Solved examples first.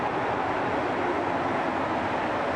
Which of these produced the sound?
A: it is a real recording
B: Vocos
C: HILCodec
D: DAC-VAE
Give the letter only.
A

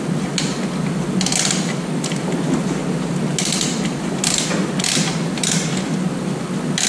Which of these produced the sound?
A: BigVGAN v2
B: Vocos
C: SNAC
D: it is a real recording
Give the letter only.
D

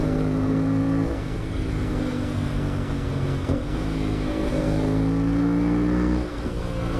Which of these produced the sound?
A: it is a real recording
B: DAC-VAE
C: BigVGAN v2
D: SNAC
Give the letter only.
D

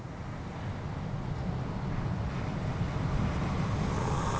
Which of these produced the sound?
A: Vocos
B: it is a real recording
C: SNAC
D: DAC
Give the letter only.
B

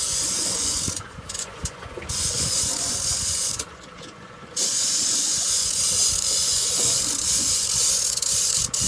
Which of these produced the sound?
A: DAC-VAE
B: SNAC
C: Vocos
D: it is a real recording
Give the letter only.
C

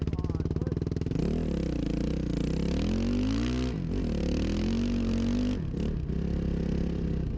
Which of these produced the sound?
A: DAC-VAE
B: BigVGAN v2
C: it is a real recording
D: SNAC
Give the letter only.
C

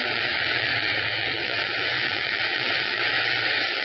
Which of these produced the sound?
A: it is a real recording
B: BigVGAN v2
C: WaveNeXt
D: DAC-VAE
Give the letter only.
C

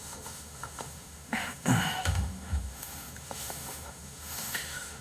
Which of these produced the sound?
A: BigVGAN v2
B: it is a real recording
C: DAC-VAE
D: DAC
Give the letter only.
C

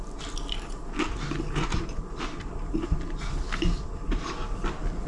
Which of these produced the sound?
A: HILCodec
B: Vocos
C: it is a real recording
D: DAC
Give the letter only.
C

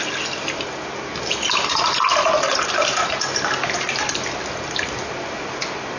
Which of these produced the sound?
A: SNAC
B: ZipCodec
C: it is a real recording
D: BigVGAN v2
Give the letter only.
C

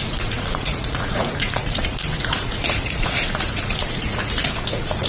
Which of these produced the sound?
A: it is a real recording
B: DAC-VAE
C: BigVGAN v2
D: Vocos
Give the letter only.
D